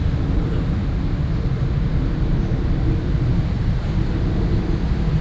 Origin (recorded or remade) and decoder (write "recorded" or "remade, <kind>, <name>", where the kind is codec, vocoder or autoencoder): recorded